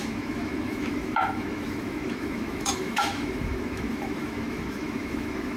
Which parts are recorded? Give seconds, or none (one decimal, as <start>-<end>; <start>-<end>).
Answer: none